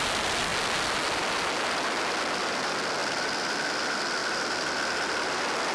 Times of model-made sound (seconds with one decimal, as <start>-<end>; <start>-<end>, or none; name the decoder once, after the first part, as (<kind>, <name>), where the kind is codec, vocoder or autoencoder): none